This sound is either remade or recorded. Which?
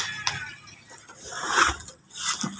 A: recorded